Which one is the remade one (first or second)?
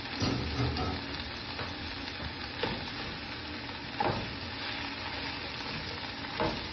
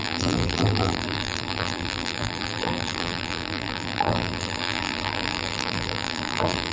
second